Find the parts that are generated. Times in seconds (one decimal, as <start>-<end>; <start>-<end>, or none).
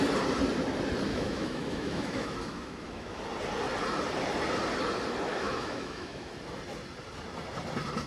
1.1-3.2; 5.3-6.4